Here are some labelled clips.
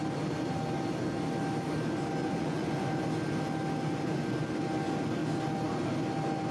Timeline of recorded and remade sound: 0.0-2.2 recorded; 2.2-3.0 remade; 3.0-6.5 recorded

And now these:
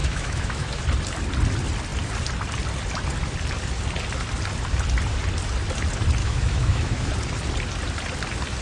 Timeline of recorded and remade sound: 0.0-0.8 remade; 0.8-6.2 recorded; 6.2-7.1 remade; 7.1-8.6 recorded

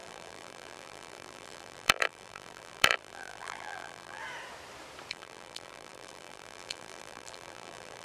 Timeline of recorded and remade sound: 0.0-4.2 remade; 4.2-5.1 recorded; 5.1-8.0 remade

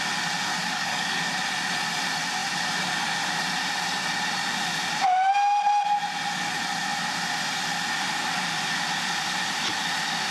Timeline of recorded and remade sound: 0.0-0.5 recorded; 0.5-1.2 remade; 1.2-10.3 recorded

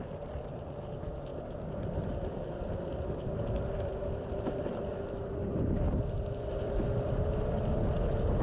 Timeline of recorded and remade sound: 0.0-8.4 recorded

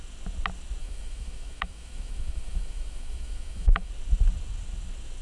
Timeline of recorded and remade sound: 0.0-0.8 recorded; 0.8-3.9 remade; 3.9-5.2 recorded